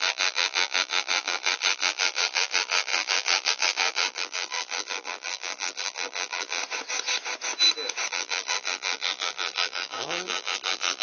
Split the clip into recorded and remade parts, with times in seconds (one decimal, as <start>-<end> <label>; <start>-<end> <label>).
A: 0.0-6.6 remade; 6.6-8.1 recorded; 8.1-11.0 remade

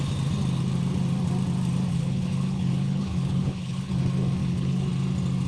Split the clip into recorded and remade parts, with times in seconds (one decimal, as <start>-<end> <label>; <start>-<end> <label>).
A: 0.0-1.9 recorded; 1.9-3.9 remade; 3.9-4.4 recorded; 4.4-4.9 remade; 4.9-5.5 recorded

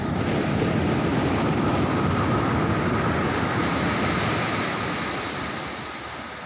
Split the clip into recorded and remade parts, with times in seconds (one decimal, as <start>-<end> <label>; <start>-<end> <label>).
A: 0.0-1.1 recorded; 1.1-1.7 remade; 1.7-3.6 recorded; 3.6-4.2 remade; 4.2-6.5 recorded

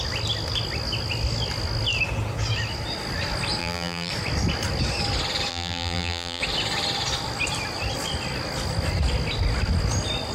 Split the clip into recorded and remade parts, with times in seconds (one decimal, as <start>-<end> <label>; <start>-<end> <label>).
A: 0.0-3.6 recorded; 3.6-4.1 remade; 4.1-5.5 recorded; 5.5-6.4 remade; 6.4-10.3 recorded

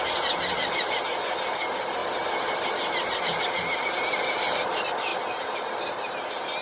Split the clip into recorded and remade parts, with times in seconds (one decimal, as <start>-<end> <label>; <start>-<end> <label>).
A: 0.0-6.6 recorded